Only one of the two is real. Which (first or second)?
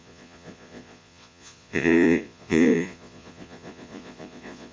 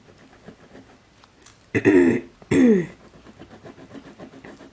second